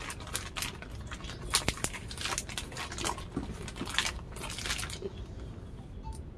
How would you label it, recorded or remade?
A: recorded